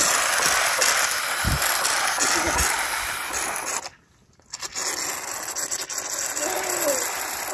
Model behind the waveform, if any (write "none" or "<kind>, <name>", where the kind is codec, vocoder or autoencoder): none